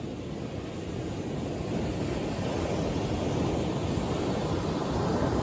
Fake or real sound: real